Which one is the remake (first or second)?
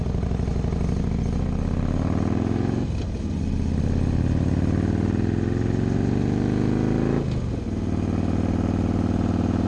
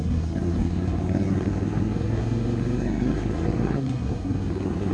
second